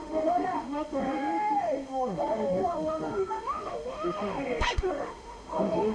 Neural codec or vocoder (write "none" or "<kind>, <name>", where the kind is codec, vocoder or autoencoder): autoencoder, DAC-VAE